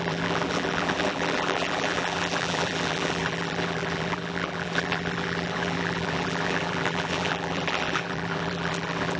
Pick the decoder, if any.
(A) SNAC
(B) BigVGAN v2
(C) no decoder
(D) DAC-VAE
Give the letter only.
B